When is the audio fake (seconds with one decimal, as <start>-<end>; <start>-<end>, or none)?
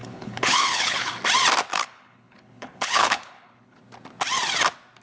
0.0-1.1; 1.7-3.8